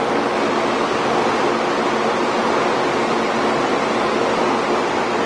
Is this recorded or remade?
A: recorded